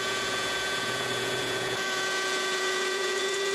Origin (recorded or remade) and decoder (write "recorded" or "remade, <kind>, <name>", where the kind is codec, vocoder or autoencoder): remade, vocoder, Vocos